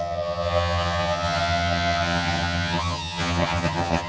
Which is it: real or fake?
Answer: fake